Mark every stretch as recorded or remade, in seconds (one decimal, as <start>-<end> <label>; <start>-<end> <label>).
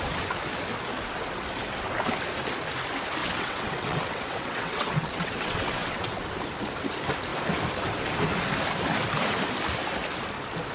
0.0-3.2 recorded; 3.2-6.3 remade; 6.3-10.7 recorded